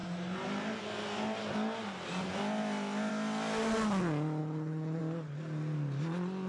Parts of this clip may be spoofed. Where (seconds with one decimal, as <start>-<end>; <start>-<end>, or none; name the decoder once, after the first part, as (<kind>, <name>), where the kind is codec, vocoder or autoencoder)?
4.4-5.0 (codec, HILCodec)